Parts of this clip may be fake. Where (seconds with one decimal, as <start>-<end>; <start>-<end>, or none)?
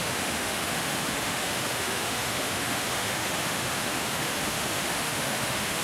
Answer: 0.0-5.8